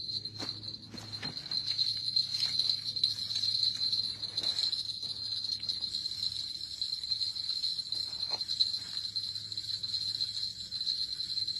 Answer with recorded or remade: recorded